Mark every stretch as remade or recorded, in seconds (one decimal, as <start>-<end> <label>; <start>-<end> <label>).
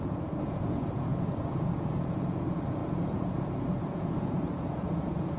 0.0-5.4 remade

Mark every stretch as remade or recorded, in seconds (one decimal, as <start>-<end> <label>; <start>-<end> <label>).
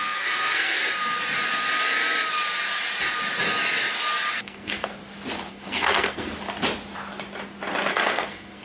0.0-0.8 remade; 0.8-4.3 recorded; 4.3-4.9 remade; 4.9-5.5 recorded; 5.5-6.3 remade; 6.3-7.9 recorded; 7.9-8.6 remade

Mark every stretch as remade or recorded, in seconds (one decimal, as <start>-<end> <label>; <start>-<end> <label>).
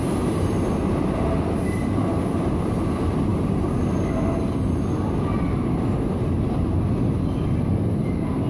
0.0-8.5 recorded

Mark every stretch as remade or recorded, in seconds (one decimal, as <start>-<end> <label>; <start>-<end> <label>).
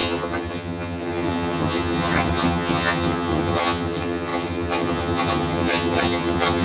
0.0-6.6 remade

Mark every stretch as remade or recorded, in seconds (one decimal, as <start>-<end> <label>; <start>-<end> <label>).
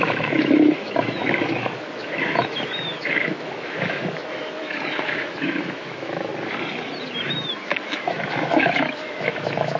0.0-6.3 remade; 6.3-7.5 recorded; 7.5-9.8 remade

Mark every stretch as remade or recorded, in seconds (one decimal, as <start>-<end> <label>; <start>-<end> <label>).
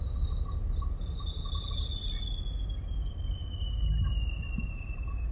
0.0-5.3 recorded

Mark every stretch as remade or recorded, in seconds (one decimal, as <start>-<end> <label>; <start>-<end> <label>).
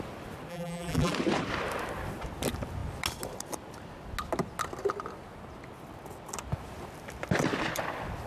0.0-0.5 recorded; 0.5-1.1 remade; 1.1-8.3 recorded